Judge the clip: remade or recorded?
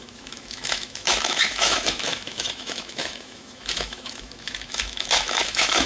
remade